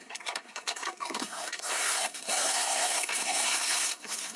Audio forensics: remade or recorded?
remade